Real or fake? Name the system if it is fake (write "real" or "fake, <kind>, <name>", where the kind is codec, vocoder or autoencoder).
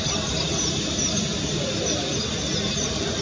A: real